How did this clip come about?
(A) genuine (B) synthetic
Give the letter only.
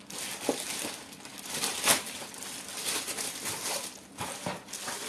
A